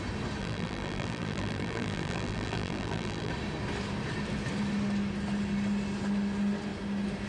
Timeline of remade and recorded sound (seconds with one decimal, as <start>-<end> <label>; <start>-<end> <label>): 0.0-0.4 recorded; 0.4-3.3 remade; 3.3-7.3 recorded